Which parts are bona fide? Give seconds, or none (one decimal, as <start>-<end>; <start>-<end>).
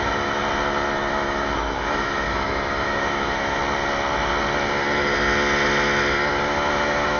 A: 0.4-1.1; 3.6-6.3